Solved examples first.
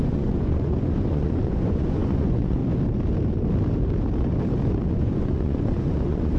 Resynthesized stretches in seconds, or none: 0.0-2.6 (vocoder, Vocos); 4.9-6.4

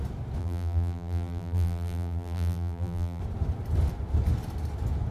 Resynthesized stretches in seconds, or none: 0.4-3.2 (vocoder, BigVGAN v2)

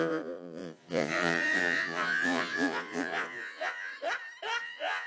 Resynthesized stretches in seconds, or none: 0.0-3.9 (vocoder, Vocos); 4.6-5.1

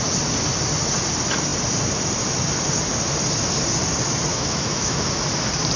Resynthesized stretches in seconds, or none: 4.3-5.1 (autoencoder, DAC-VAE)